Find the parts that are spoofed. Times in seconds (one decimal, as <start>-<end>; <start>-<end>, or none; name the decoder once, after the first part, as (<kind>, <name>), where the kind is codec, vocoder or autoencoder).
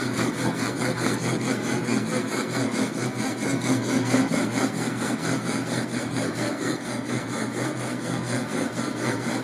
0.0-9.4 (codec, SNAC)